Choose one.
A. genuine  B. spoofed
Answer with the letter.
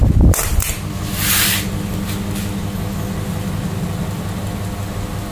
A